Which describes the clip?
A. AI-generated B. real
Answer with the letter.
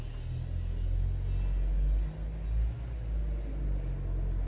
B